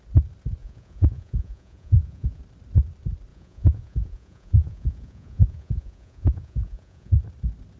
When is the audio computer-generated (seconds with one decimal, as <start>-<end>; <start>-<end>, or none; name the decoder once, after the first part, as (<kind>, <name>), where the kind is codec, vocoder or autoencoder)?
0.6-2.4 (vocoder, Vocos); 3.3-7.1